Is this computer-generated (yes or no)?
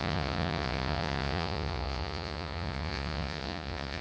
yes